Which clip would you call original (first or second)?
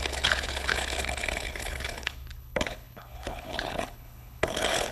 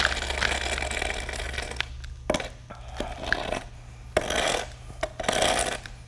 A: second